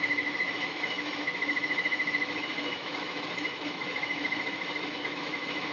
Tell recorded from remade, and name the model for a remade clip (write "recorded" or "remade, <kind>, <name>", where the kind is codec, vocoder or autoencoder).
remade, autoencoder, DAC-VAE